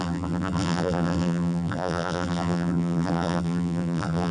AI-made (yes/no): yes